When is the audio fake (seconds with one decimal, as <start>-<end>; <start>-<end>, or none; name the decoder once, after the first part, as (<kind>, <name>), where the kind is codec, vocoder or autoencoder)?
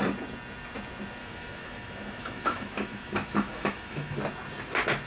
1.2-4.2 (autoencoder, DAC-VAE)